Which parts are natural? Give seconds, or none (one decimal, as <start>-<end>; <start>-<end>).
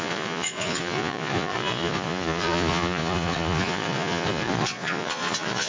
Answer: none